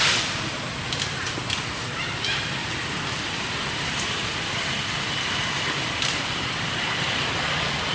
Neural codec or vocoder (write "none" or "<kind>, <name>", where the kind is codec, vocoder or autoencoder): none